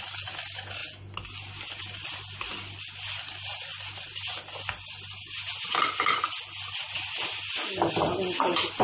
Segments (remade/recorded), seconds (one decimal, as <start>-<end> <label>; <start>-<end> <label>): 0.0-8.8 recorded